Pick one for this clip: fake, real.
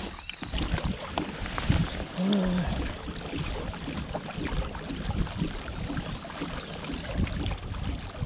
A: real